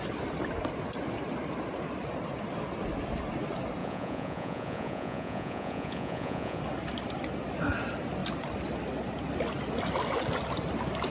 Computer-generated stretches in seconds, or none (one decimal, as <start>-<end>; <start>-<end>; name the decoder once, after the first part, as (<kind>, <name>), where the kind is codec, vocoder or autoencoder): 3.8-6.6 (vocoder, Vocos)